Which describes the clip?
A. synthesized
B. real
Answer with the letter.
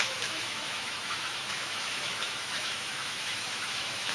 A